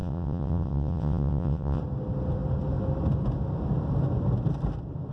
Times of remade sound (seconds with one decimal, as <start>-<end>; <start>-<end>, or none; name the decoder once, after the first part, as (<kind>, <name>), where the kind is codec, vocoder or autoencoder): 0.0-1.8 (vocoder, WaveNeXt)

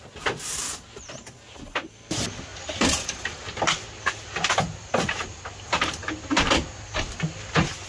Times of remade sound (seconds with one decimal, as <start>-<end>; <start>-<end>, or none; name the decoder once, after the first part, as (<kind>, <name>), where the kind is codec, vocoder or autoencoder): none

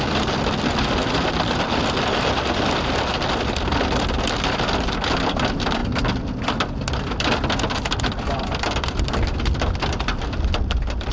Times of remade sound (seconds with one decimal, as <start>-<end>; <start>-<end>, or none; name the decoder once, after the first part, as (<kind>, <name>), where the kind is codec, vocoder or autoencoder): none

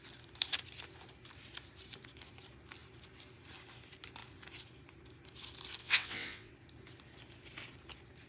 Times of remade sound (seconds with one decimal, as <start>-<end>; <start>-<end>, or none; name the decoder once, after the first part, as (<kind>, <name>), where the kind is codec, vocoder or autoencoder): 5.8-6.5 (vocoder, WaveNeXt)

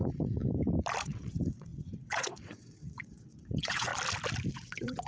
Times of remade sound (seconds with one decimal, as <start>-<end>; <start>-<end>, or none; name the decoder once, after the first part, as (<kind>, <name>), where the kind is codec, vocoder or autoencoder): 0.0-0.4 (vocoder, WaveNeXt); 1.0-3.9; 4.5-5.1

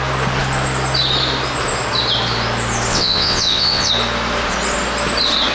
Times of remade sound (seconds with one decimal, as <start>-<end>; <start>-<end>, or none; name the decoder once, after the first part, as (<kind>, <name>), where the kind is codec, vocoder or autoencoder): 2.9-3.9 (vocoder, WaveNeXt)

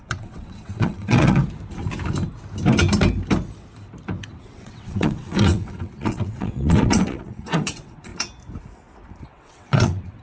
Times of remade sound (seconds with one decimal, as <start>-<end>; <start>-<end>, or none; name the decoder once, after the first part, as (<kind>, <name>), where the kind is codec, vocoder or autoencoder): 0.0-1.4 (vocoder, WaveNeXt); 4.3-8.1; 9.2-10.2